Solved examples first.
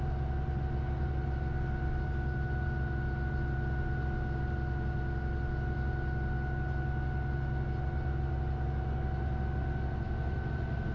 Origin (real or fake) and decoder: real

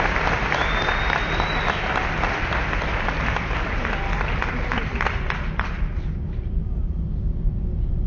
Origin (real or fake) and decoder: real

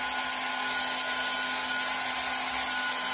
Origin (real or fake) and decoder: real